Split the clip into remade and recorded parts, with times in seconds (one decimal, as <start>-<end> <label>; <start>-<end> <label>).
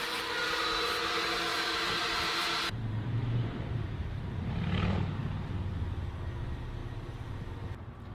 0.0-0.6 remade; 0.6-1.5 recorded; 1.5-4.5 remade; 4.5-8.1 recorded